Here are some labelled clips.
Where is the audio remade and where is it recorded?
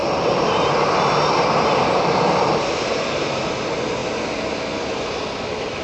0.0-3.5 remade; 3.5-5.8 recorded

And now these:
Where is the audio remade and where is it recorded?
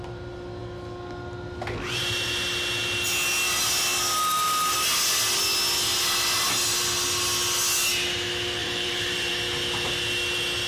0.0-8.6 recorded; 8.6-9.3 remade; 9.3-10.7 recorded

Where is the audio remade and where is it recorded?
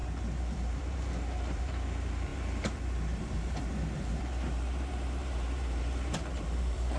0.0-7.0 remade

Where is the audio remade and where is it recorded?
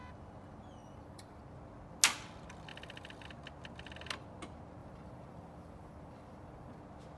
0.0-0.8 recorded; 0.8-1.4 remade; 1.4-2.7 recorded; 2.7-3.3 remade; 3.3-4.8 recorded; 4.8-6.8 remade; 6.8-7.2 recorded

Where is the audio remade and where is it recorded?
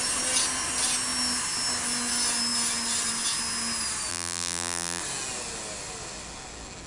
0.0-4.1 recorded; 4.1-5.0 remade; 5.0-6.9 recorded